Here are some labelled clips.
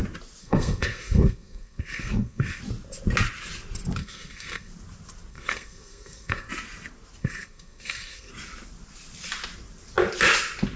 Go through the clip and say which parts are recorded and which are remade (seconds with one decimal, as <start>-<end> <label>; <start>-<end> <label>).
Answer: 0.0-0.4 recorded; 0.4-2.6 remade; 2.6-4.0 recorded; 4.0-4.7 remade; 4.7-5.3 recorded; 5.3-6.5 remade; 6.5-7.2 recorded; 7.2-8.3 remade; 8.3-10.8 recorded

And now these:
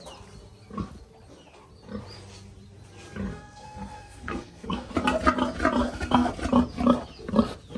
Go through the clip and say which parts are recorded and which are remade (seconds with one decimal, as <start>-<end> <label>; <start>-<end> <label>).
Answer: 0.0-3.3 recorded; 3.3-4.9 remade; 4.9-5.8 recorded; 5.8-6.3 remade; 6.3-7.8 recorded

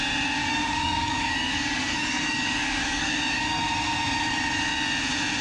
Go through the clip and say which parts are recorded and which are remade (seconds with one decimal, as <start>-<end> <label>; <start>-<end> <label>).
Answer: 0.0-0.4 recorded; 0.4-3.6 remade; 3.6-5.4 recorded

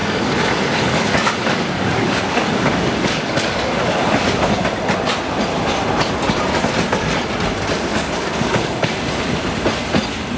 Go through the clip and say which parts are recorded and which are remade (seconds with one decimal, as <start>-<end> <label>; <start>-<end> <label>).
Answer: 0.0-4.5 remade; 4.5-7.9 recorded; 7.9-9.2 remade; 9.2-10.4 recorded